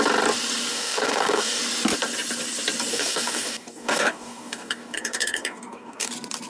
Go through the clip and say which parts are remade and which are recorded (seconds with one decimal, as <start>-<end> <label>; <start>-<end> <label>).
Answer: 0.0-0.7 recorded; 0.7-1.6 remade; 1.6-2.9 recorded; 2.9-6.1 remade; 6.1-6.5 recorded